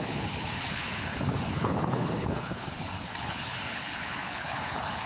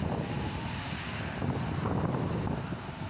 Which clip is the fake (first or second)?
first